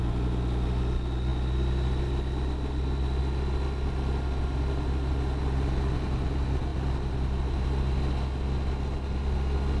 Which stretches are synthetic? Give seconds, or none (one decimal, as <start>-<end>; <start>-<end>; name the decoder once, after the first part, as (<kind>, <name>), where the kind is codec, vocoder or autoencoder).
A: none

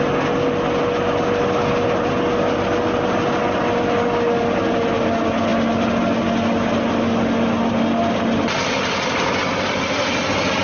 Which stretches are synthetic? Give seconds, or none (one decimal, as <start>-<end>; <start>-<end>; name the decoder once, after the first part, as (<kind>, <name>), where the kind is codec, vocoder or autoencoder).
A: none

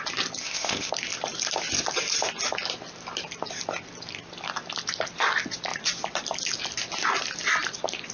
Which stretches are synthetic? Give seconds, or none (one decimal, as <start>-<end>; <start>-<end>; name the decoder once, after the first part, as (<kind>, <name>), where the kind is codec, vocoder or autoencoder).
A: 0.4-0.9 (codec, ZipCodec)

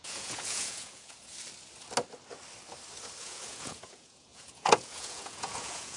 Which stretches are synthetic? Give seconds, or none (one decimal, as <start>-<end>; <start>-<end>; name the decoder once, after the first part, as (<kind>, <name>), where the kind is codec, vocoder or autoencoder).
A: 0.0-1.3 (vocoder, Vocos); 3.2-6.0